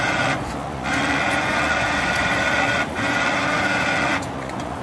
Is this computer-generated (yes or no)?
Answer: yes